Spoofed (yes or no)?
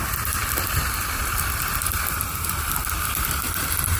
yes